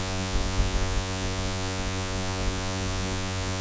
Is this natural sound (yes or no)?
no